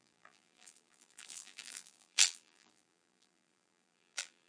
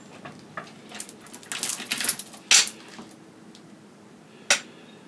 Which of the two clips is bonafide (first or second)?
second